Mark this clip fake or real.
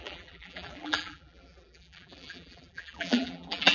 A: fake